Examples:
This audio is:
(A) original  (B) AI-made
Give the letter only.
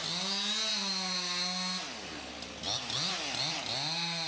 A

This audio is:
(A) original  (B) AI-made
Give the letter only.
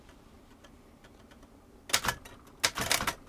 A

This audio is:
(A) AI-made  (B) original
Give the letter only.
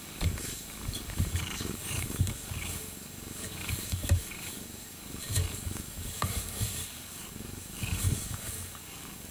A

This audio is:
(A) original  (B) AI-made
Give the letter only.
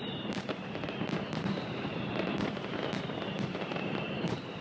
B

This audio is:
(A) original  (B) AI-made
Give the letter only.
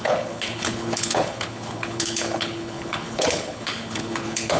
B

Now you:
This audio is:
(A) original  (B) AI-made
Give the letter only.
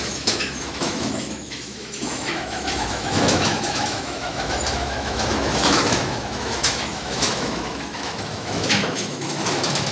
B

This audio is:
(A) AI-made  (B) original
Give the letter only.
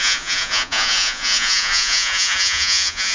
A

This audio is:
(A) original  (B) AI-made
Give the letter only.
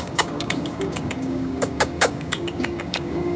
B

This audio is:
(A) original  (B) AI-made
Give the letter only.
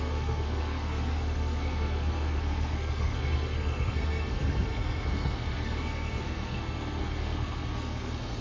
B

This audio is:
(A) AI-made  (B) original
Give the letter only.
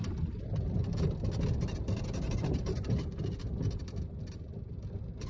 B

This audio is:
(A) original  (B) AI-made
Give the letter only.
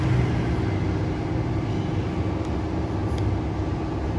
A